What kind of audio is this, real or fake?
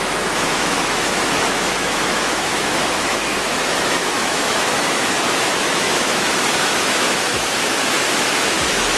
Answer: fake